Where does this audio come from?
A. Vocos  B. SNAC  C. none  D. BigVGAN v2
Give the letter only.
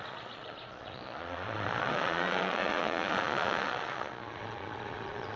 A